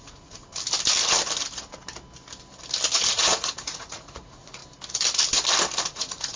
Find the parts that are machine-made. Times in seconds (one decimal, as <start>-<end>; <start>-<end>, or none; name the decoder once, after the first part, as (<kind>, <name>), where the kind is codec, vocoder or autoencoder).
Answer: 0.0-0.5 (vocoder, Vocos); 2.9-4.6; 5.9-6.4